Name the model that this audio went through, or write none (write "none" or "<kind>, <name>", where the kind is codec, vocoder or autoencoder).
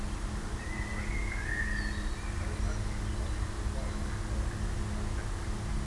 none